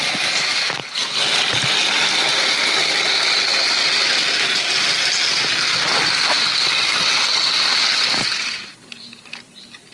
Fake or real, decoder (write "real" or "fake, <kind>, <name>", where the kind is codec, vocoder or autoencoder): real